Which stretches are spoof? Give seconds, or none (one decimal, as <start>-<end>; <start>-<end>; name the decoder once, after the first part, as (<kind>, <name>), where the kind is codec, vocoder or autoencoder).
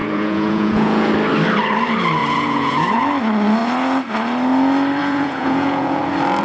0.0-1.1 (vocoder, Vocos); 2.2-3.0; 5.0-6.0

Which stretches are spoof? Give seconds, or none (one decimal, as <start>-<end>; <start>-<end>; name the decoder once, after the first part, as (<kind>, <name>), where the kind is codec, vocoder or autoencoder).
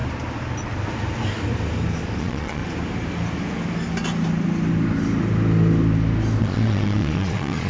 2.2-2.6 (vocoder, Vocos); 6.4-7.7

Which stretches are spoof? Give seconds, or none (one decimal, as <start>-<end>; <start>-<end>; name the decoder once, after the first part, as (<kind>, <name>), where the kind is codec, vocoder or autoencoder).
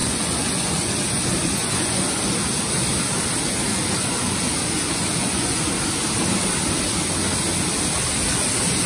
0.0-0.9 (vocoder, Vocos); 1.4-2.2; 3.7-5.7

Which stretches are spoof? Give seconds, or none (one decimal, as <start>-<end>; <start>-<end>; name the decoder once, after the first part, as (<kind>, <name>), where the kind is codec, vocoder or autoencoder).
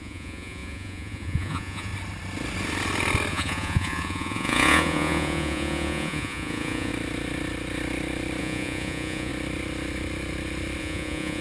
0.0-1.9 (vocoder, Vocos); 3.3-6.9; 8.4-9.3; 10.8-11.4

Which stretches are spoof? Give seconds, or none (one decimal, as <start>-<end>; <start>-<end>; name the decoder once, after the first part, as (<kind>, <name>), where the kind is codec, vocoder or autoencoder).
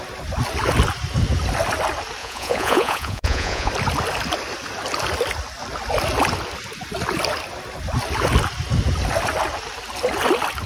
2.2-3.7 (vocoder, Vocos)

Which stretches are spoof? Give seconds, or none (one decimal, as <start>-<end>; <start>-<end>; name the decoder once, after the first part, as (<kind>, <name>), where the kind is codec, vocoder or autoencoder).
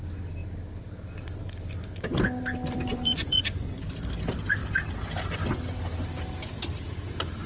2.9-3.8 (vocoder, Vocos)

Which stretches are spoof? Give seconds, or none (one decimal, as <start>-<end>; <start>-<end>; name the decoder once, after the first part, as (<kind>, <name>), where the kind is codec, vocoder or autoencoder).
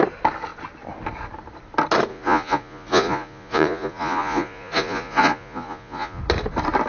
2.1-6.2 (vocoder, Vocos)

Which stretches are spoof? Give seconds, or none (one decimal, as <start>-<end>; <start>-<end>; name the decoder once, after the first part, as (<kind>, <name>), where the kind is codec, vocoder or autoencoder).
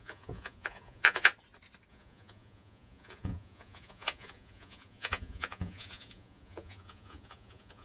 0.0-1.3 (vocoder, Vocos); 1.9-7.8